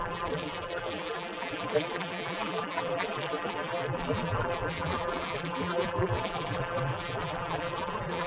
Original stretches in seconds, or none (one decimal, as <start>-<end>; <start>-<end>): none